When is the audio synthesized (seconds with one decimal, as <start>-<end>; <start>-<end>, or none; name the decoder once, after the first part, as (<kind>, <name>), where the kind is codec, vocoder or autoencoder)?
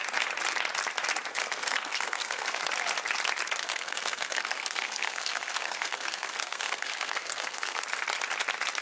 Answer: 1.3-2.6 (codec, SNAC); 3.6-7.8